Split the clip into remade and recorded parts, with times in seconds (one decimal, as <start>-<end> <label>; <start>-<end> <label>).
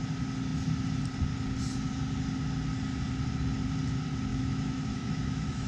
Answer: 0.0-4.3 recorded; 4.3-5.7 remade